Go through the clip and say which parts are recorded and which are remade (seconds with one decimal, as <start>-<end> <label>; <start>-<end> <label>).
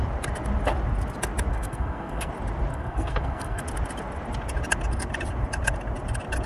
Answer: 0.0-1.5 recorded; 1.5-2.3 remade; 2.3-2.7 recorded; 2.7-3.6 remade; 3.6-6.5 recorded